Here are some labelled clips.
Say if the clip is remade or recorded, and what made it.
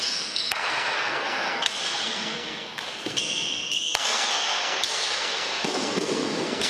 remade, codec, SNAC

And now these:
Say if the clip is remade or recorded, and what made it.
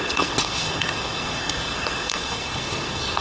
remade, codec, SNAC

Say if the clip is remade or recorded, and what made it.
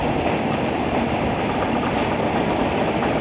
recorded